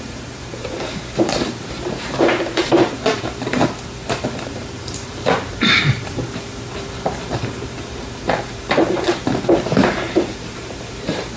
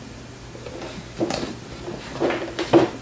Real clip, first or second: second